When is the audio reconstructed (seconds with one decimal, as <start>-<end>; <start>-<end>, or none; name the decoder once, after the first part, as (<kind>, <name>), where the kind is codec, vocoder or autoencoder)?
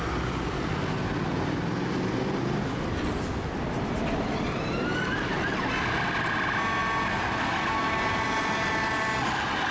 none